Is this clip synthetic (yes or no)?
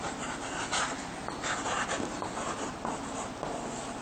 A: no